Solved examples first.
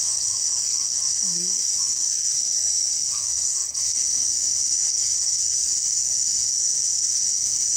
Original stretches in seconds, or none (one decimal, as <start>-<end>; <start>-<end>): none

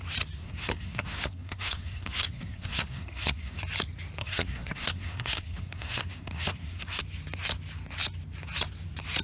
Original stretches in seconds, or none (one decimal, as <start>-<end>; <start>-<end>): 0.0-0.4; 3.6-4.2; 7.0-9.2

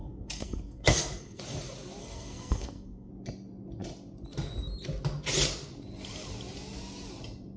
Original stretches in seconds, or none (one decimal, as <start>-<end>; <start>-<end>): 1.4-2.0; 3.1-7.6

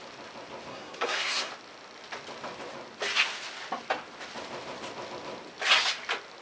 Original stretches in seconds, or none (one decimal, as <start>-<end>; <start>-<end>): 0.0-0.7; 1.5-6.4

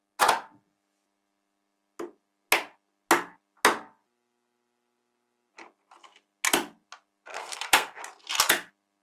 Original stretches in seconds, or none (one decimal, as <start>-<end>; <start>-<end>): 0.0-7.3; 8.0-9.0